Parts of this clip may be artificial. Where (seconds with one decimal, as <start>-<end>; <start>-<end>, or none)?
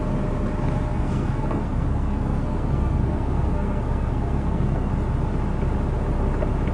0.9-4.9